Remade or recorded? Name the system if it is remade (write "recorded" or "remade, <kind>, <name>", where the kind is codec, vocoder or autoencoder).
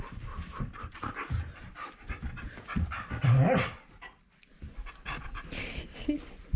recorded